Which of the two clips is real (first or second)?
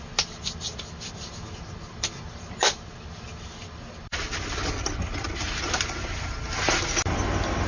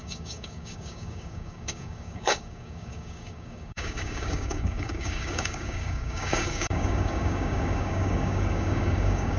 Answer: first